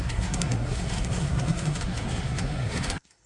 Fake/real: fake